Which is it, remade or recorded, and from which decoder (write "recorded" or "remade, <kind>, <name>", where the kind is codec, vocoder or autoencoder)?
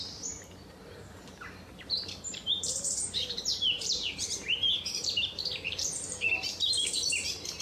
remade, vocoder, BigVGAN v2